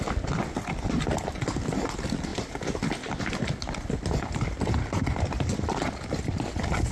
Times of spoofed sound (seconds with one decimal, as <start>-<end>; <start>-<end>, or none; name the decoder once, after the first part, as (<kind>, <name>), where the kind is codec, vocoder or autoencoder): none